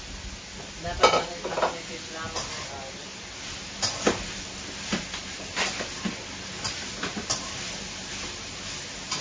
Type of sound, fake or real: real